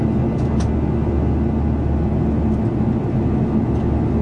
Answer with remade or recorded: recorded